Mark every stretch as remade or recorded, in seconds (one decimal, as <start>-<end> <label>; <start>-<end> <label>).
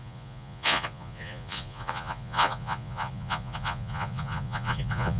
0.0-5.2 remade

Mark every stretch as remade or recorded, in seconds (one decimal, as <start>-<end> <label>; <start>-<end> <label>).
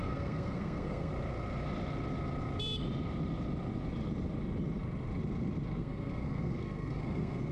0.0-1.1 remade; 1.1-5.8 recorded; 5.8-7.5 remade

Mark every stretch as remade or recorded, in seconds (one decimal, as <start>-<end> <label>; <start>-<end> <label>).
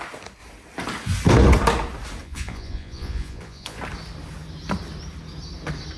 0.0-2.2 recorded; 2.2-3.8 remade; 3.8-6.0 recorded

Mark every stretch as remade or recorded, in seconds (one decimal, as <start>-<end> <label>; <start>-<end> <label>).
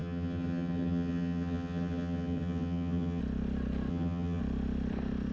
0.0-3.2 remade; 3.2-3.9 recorded; 3.9-4.4 remade; 4.4-5.3 recorded